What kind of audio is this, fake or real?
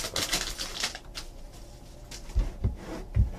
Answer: real